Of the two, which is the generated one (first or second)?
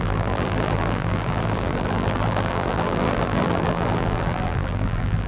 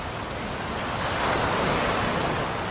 first